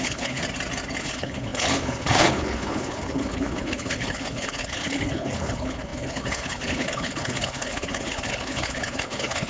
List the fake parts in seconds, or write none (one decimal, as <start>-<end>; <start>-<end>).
0.0-0.4; 1.0-9.5